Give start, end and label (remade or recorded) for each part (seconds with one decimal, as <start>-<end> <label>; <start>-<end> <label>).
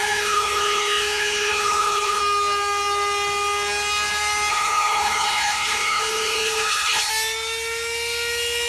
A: 0.0-2.2 remade; 2.2-4.5 recorded; 4.5-7.1 remade; 7.1-8.7 recorded